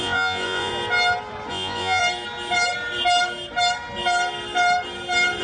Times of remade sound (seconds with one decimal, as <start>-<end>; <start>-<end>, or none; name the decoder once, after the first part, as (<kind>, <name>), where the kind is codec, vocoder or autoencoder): 0.0-0.7 (vocoder, Vocos); 1.5-2.0